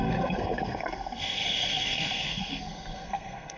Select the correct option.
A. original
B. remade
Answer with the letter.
B